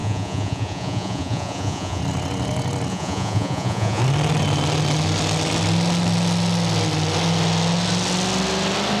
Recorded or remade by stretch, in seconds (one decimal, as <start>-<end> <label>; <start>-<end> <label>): 0.0-2.0 remade; 2.0-2.9 recorded; 2.9-4.0 remade; 4.0-9.0 recorded